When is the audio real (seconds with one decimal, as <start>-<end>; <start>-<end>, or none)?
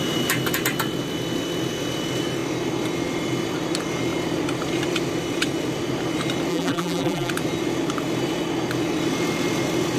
0.0-6.5; 7.3-10.0